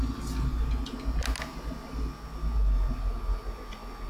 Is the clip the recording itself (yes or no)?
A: yes